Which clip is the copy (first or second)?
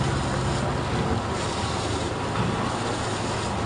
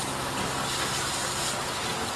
first